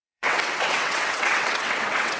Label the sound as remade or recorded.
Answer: remade